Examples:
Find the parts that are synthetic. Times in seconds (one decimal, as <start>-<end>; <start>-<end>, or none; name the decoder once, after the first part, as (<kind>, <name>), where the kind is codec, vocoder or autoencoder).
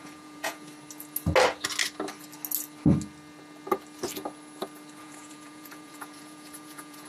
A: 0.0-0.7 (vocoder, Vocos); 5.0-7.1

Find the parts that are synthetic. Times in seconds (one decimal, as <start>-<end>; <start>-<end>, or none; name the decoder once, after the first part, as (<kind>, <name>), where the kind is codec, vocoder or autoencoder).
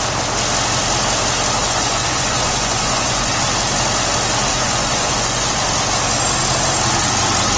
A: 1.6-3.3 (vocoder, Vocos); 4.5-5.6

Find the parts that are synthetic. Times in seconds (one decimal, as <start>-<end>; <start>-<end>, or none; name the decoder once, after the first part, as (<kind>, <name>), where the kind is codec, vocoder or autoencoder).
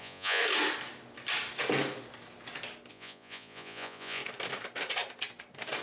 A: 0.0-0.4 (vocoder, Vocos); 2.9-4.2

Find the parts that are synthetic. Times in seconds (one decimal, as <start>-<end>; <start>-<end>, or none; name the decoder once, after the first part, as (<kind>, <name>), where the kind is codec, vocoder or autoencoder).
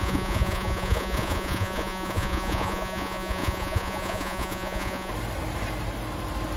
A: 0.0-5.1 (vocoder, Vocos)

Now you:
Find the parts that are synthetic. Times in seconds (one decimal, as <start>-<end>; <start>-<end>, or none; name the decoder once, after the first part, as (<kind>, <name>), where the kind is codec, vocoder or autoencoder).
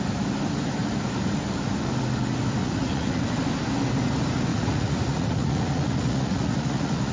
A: 2.6-3.2 (vocoder, Vocos); 4.5-7.1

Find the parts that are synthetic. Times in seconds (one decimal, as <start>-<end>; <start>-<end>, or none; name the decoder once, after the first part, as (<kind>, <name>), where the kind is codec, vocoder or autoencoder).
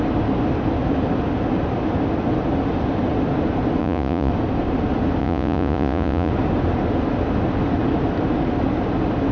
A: 3.8-4.3 (vocoder, Vocos); 5.2-6.3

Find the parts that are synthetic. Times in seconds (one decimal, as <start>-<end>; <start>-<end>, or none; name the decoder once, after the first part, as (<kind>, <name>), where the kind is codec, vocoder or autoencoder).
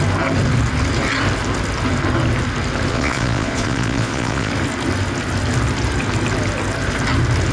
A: 2.9-4.5 (vocoder, Vocos)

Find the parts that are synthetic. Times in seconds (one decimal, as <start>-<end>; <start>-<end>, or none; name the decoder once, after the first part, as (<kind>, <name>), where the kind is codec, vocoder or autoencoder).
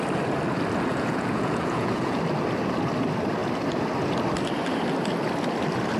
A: 0.9-2.2 (vocoder, Vocos)